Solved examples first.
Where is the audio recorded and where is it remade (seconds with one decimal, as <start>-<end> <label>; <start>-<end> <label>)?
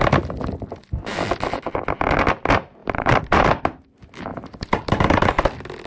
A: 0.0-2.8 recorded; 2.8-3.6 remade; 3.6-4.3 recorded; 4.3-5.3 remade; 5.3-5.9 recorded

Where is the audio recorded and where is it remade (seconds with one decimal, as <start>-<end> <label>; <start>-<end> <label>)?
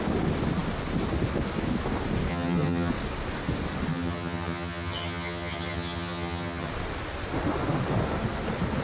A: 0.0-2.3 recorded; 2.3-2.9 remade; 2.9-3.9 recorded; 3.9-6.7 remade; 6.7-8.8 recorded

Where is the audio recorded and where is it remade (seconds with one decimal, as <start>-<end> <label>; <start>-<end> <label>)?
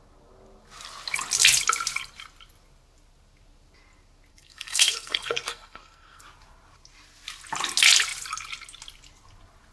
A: 0.0-4.3 recorded; 4.3-6.2 remade; 6.2-9.7 recorded